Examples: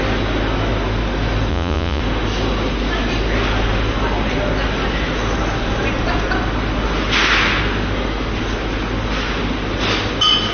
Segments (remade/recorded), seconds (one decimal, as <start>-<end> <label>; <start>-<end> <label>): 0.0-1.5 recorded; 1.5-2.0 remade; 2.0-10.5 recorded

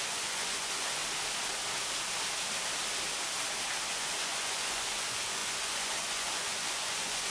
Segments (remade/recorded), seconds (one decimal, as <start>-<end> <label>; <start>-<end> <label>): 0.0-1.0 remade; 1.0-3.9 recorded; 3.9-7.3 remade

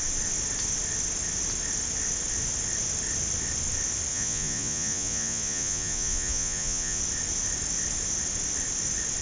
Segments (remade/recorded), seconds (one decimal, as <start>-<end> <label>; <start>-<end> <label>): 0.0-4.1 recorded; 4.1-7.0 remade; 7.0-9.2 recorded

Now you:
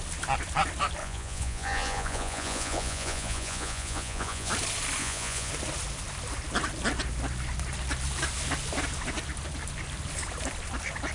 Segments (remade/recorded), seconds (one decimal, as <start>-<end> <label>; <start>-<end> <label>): 0.0-1.0 recorded; 1.0-4.5 remade; 4.5-5.0 recorded; 5.0-5.5 remade; 5.5-11.1 recorded

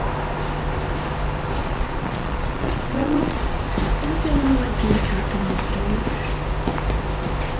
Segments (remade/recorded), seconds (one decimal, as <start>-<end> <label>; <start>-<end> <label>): 0.0-1.6 recorded; 1.6-3.6 remade; 3.6-7.6 recorded

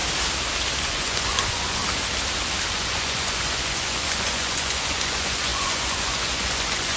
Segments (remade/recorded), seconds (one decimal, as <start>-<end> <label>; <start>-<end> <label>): 0.0-0.8 recorded; 0.8-1.8 remade; 1.8-2.7 recorded; 2.7-7.0 remade

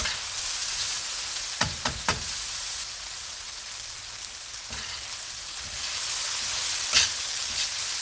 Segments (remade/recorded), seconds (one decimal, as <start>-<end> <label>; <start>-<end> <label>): 0.0-0.6 recorded; 0.6-3.7 remade; 3.7-5.4 recorded; 5.4-6.0 remade; 6.0-8.0 recorded

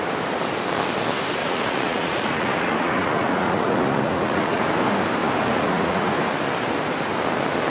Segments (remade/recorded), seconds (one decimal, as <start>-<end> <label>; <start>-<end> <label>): 0.0-1.4 recorded; 1.4-4.6 remade; 4.6-5.2 recorded; 5.2-6.1 remade; 6.1-7.7 recorded